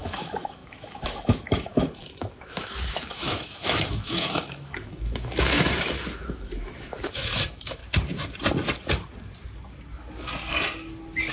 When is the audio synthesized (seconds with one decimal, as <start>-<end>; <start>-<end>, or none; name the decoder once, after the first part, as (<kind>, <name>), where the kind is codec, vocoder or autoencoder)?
0.0-7.8 (autoencoder, DAC-VAE)